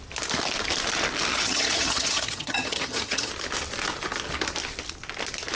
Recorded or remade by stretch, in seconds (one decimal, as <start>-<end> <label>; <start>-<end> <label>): 0.0-1.3 recorded; 1.3-3.3 remade; 3.3-5.5 recorded